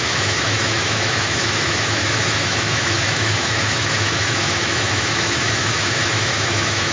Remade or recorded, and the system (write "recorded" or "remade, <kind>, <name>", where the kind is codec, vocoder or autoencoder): remade, autoencoder, DAC-VAE